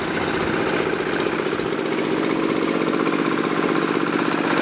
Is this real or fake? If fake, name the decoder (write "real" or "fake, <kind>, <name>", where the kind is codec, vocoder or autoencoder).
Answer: real